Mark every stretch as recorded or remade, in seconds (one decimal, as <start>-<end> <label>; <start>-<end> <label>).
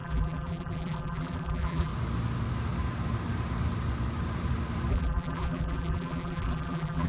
0.0-1.9 remade; 1.9-4.9 recorded; 4.9-7.1 remade